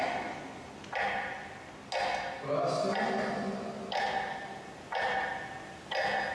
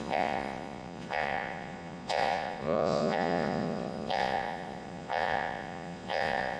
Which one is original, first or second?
first